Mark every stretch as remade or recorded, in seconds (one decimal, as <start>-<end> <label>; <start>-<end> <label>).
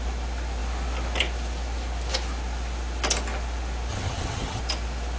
0.0-3.9 recorded; 3.9-4.6 remade; 4.6-5.2 recorded